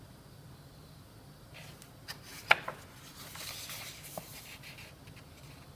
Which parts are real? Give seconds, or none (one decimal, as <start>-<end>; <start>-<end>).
0.0-5.8